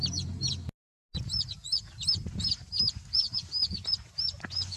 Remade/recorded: recorded